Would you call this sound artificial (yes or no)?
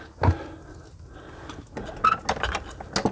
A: no